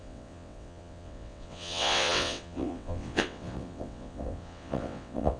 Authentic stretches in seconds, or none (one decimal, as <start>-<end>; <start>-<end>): none